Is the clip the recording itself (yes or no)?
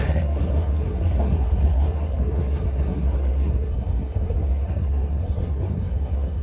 no